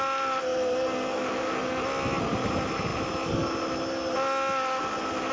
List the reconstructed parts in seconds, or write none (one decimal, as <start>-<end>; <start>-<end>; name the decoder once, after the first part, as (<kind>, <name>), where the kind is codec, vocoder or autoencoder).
none

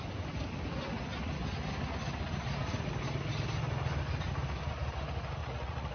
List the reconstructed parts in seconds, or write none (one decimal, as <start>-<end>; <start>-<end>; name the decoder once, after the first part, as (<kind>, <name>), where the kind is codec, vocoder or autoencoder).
5.4-5.9 (vocoder, Vocos)

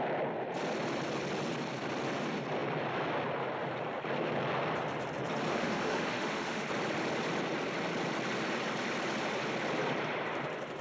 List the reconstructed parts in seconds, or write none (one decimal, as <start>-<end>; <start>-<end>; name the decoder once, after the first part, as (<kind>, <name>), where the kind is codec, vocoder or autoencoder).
5.5-6.7 (autoencoder, DAC-VAE)

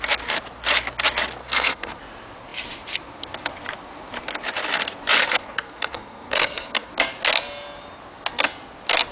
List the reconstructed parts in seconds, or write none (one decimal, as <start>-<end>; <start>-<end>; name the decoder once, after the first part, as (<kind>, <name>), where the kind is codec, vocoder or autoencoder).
1.4-2.0 (codec, SNAC); 5.2-6.9

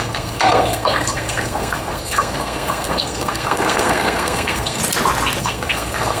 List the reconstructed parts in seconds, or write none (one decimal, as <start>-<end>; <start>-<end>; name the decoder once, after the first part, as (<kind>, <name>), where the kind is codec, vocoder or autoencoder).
0.0-4.8 (codec, SNAC); 5.4-6.2

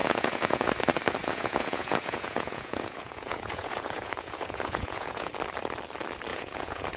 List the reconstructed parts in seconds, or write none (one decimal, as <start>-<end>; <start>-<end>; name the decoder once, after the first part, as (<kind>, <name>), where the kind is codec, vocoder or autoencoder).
0.0-0.7 (vocoder, Vocos); 1.2-5.3; 6.3-7.0